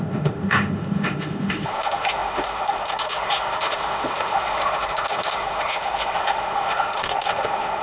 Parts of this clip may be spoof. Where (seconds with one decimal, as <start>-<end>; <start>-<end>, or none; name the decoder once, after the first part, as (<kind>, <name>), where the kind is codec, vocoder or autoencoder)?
0.0-7.8 (autoencoder, DAC-VAE)